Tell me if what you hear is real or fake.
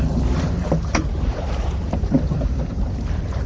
fake